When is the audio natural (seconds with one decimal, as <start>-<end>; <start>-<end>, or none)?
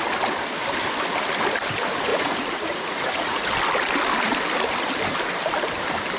0.0-2.1; 3.5-6.2